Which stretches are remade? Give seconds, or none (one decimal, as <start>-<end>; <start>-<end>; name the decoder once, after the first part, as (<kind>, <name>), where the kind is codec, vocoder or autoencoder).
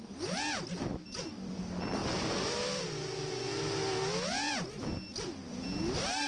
0.9-1.6 (vocoder, BigVGAN v2)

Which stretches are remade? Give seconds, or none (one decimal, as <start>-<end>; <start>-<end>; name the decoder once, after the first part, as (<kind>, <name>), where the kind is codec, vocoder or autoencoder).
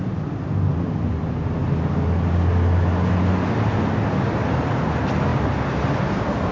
none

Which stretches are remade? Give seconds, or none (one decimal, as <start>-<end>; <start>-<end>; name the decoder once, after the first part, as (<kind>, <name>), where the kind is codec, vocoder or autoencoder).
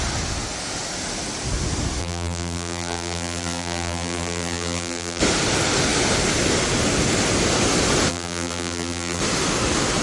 2.0-5.2 (vocoder, BigVGAN v2); 8.1-9.2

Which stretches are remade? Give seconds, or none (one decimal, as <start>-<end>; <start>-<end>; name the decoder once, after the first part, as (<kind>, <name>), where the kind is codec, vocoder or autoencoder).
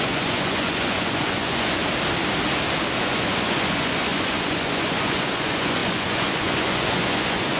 0.0-1.8 (vocoder, Vocos); 3.0-7.6